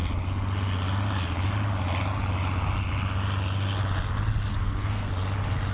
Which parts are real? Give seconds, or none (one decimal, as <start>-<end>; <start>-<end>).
0.0-4.5; 5.1-5.7